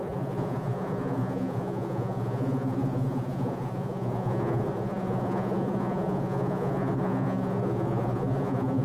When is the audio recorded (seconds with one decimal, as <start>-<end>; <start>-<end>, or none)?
none